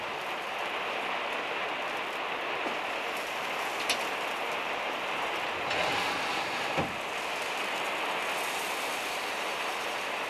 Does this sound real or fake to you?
real